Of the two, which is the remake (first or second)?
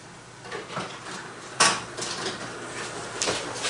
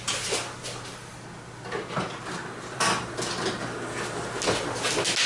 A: first